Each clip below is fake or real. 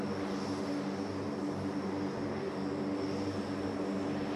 real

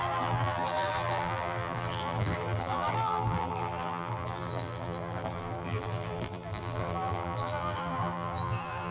fake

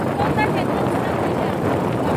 fake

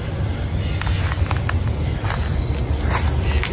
real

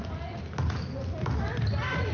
real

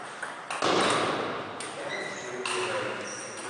real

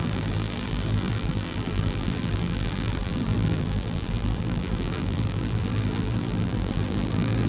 fake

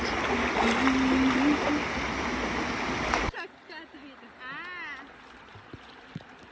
real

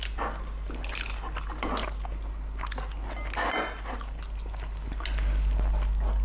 real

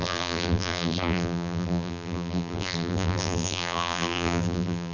fake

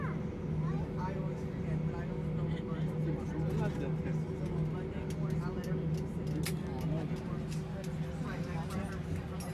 real